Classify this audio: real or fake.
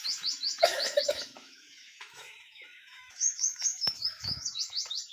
fake